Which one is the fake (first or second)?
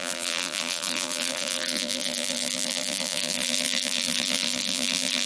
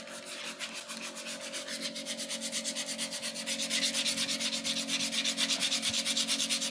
first